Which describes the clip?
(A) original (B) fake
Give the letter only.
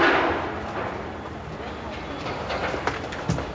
A